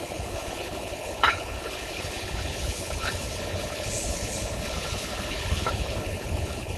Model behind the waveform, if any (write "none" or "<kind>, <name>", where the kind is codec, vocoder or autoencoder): codec, HILCodec